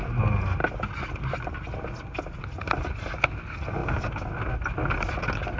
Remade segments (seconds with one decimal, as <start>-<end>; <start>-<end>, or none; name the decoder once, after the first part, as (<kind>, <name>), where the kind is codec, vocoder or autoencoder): 0.6-2.4 (vocoder, BigVGAN v2); 3.8-4.5